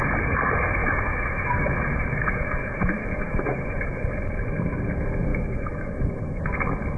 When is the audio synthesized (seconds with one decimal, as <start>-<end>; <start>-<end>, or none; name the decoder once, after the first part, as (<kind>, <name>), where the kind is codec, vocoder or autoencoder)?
0.8-4.0 (autoencoder, DAC-VAE); 5.3-6.4